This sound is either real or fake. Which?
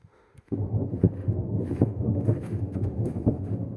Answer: fake